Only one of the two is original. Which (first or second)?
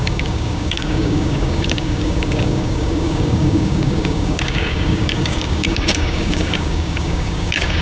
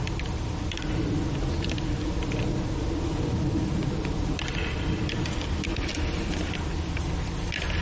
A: second